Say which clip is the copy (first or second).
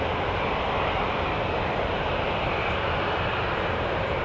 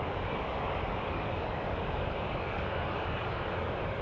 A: second